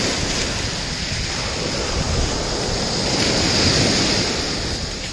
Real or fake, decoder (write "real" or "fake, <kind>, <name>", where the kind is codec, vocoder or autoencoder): real